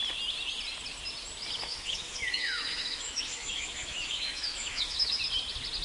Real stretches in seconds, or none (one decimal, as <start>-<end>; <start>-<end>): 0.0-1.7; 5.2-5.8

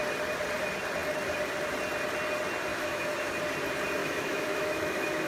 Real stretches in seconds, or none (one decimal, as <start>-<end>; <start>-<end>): 0.0-2.7; 3.3-4.0

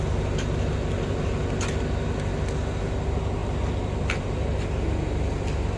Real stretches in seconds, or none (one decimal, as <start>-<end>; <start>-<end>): 0.0-5.8

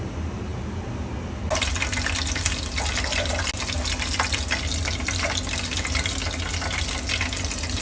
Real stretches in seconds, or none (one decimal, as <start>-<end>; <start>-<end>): 0.0-7.8